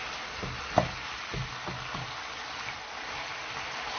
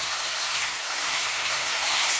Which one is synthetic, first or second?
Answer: second